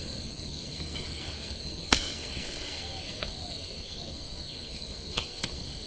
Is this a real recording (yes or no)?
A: no